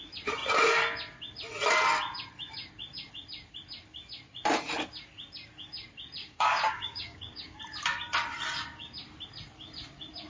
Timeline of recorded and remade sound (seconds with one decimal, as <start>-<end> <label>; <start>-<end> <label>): 0.0-6.2 recorded; 6.2-7.6 remade; 7.6-10.3 recorded